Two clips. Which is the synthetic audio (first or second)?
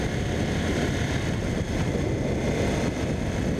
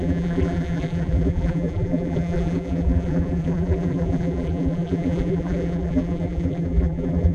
second